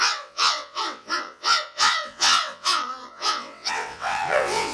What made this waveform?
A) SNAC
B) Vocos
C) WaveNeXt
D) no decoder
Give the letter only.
C